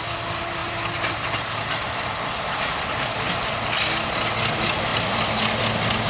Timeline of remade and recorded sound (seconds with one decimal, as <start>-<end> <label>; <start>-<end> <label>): 0.0-6.1 recorded